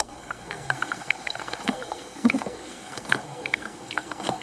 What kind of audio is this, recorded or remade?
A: remade